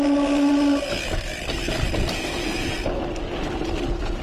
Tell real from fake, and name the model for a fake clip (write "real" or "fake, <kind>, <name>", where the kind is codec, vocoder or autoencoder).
real